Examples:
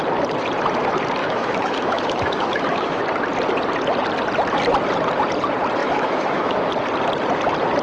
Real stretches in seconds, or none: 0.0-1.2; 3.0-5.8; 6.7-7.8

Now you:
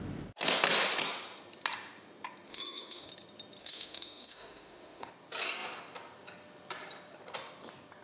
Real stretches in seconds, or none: 0.0-2.5; 3.1-3.6; 5.1-8.0

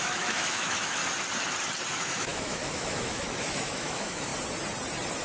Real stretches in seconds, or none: 1.0-1.9; 4.3-5.2